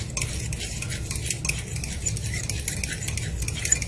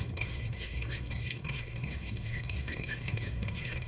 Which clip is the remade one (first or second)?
second